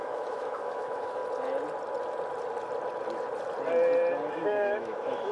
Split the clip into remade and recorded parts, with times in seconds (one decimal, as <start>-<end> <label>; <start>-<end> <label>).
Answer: 0.0-1.2 remade; 1.2-4.4 recorded; 4.4-5.3 remade